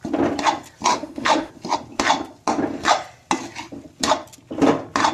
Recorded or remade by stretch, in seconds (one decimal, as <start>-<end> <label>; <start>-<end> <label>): 0.0-0.9 recorded; 0.9-1.5 remade; 1.5-5.1 recorded